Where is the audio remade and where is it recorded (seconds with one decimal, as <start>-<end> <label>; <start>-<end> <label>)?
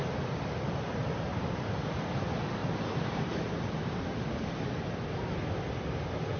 0.0-1.3 recorded; 1.3-2.0 remade; 2.0-2.6 recorded; 2.6-5.2 remade; 5.2-6.4 recorded